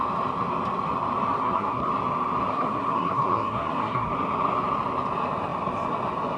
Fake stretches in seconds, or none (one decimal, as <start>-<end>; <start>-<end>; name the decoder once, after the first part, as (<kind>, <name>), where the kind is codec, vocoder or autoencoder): 1.4-1.9 (codec, SNAC); 2.5-4.1